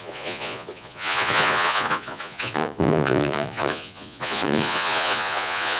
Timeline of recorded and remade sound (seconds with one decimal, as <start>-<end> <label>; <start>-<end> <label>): 0.0-5.8 remade